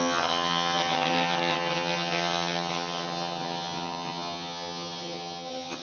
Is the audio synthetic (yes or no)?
yes